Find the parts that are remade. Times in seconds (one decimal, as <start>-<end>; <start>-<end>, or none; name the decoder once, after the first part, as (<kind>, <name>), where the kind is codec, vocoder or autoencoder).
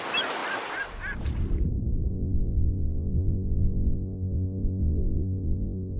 2.1-6.0 (vocoder, Vocos)